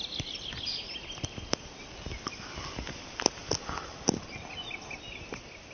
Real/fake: real